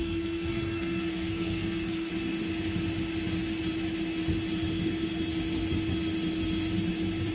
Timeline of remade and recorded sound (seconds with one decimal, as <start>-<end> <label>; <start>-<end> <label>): 0.0-2.1 remade; 2.1-7.3 recorded